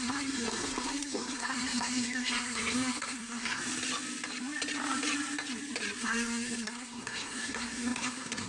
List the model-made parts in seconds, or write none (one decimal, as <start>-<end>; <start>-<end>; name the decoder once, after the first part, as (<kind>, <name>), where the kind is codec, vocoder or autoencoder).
0.0-3.6 (codec, SNAC); 6.0-8.5